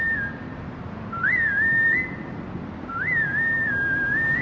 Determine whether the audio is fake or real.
real